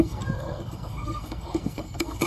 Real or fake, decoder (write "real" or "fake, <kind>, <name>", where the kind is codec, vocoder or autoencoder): fake, codec, SNAC